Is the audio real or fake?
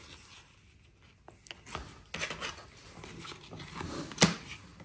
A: real